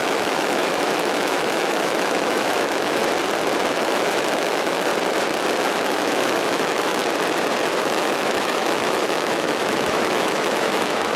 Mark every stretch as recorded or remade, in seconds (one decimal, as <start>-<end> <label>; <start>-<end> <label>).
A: 0.0-3.0 remade; 3.0-3.7 recorded; 3.7-4.9 remade; 4.9-5.6 recorded; 5.6-7.0 remade; 7.0-7.8 recorded; 7.8-11.2 remade